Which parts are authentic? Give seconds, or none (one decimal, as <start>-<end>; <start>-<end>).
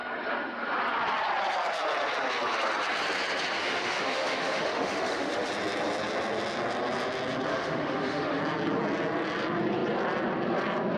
0.0-3.6; 5.5-7.5; 8.4-11.0